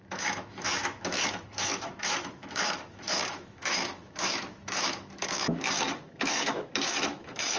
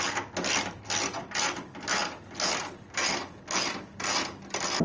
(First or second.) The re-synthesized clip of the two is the first